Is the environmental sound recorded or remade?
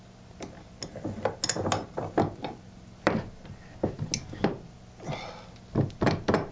recorded